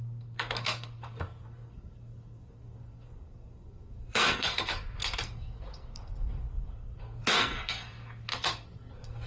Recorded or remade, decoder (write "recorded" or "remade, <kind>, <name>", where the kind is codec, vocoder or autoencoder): remade, codec, SNAC